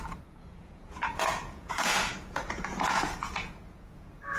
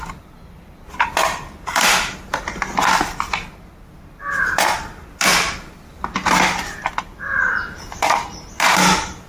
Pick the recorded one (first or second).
second